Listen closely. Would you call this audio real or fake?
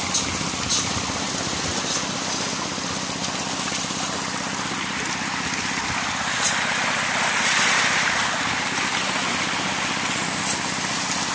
real